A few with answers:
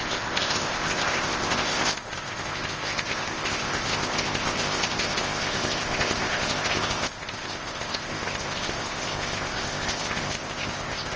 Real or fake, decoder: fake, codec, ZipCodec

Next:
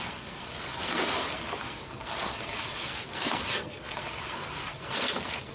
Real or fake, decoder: fake, codec, SNAC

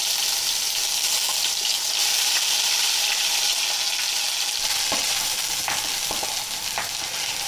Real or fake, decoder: real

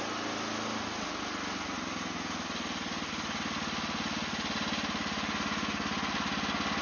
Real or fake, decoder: real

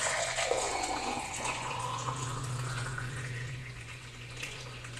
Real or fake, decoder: fake, vocoder, Vocos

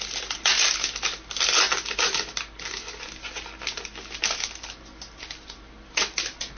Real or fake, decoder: real